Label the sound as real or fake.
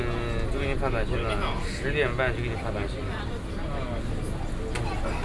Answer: real